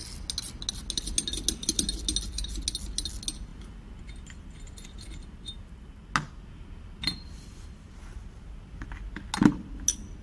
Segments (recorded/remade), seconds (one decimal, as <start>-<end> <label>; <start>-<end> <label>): 0.0-10.2 recorded